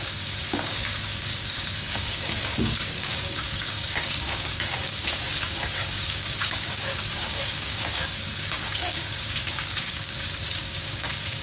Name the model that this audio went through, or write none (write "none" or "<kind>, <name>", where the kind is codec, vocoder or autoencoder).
codec, DAC